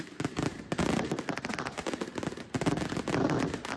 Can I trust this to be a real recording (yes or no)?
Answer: yes